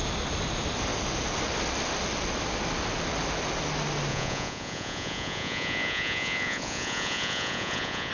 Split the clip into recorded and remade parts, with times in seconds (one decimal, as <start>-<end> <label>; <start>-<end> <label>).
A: 0.0-4.1 recorded; 4.1-8.1 remade